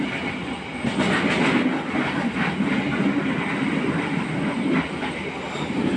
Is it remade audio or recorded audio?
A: recorded